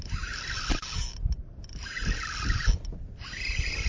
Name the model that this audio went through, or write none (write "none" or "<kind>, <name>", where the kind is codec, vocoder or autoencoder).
none